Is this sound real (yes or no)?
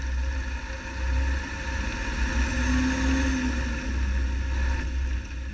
yes